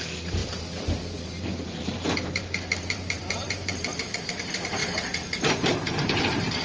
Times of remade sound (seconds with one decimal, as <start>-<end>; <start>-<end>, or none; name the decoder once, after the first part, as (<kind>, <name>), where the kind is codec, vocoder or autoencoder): 0.0-0.4 (vocoder, BigVGAN v2); 1.5-4.8; 5.5-6.6